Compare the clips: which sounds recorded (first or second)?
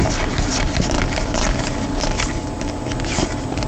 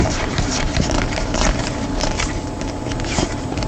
first